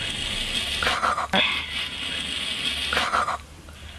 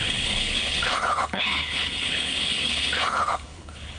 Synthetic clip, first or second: second